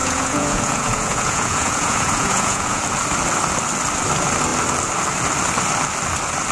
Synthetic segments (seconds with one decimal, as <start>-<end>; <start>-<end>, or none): 0.0-2.8